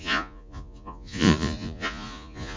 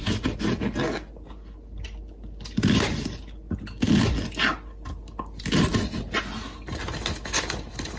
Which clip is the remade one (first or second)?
first